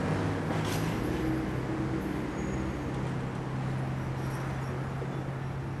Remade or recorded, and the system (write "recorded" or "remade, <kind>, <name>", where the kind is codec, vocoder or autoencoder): recorded